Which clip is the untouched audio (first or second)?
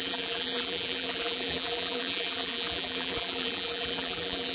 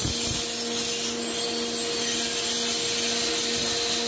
second